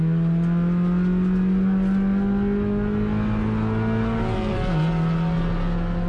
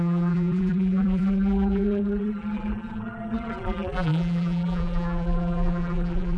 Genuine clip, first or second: first